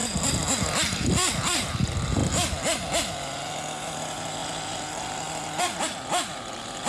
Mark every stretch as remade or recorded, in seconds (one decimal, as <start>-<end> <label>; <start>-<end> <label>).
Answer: 0.0-6.9 recorded